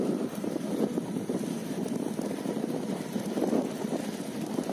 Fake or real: real